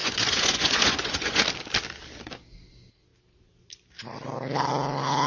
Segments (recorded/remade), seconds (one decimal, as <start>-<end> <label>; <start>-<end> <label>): 0.0-1.4 remade; 1.4-5.3 recorded